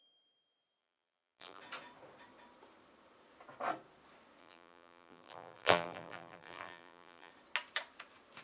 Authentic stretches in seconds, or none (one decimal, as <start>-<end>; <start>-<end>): 0.0-0.8; 1.6-4.4; 7.3-8.4